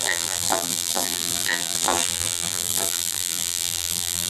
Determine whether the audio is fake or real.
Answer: fake